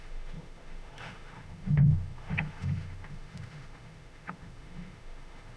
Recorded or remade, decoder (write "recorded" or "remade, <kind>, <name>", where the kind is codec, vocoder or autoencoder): remade, autoencoder, DAC-VAE